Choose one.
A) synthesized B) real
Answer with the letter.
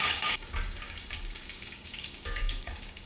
A